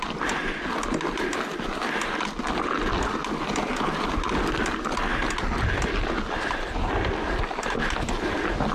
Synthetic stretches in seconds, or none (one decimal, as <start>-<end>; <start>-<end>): none